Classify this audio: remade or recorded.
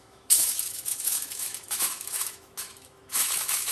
remade